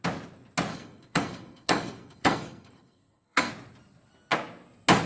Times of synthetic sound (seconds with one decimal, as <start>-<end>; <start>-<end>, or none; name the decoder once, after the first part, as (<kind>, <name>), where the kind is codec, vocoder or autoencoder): 0.7-3.5 (codec, SNAC)